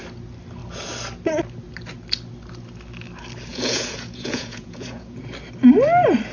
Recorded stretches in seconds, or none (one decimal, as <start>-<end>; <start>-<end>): 0.0-3.5; 5.2-6.3